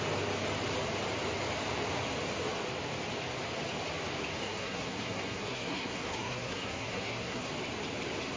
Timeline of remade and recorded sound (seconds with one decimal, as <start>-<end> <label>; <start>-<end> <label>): 0.0-4.4 recorded; 4.4-7.5 remade; 7.5-8.4 recorded